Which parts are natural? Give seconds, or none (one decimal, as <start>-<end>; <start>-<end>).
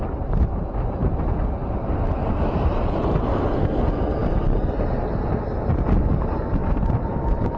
0.0-1.6; 3.5-6.6